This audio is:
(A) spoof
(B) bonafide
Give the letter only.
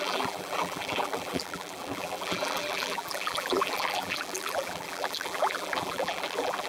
A